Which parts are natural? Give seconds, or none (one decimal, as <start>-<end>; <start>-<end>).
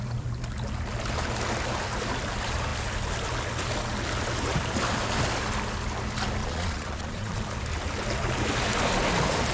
0.0-6.4; 7.4-9.5